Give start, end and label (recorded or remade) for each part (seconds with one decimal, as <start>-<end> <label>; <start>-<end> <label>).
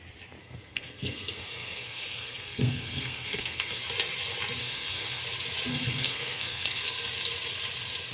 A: 0.0-0.4 recorded; 0.4-3.8 remade; 3.8-4.6 recorded; 4.6-5.2 remade; 5.2-5.7 recorded; 5.7-7.1 remade; 7.1-8.1 recorded